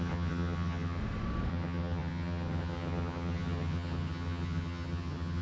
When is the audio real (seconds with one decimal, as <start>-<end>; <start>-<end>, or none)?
1.0-1.5